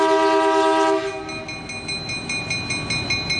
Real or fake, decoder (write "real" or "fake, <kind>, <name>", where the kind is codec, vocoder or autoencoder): real